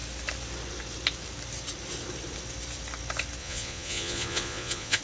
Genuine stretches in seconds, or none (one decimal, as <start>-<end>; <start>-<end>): 0.0-3.4

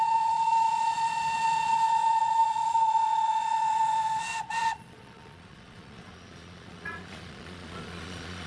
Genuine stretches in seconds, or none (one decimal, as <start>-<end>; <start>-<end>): none

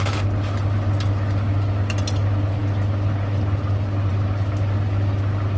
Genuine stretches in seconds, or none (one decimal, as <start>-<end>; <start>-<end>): 0.0-5.6

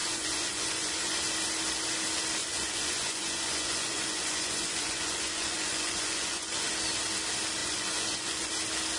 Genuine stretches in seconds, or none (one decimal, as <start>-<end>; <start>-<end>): 1.2-2.4; 6.7-7.6; 8.5-9.0